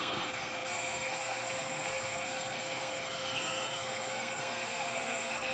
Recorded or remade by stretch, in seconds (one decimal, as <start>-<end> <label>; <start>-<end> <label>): 0.0-5.5 remade